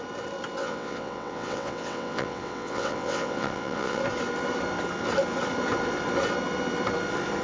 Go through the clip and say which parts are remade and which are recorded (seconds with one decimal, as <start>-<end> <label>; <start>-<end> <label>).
0.0-0.6 recorded; 0.6-4.0 remade; 4.0-7.4 recorded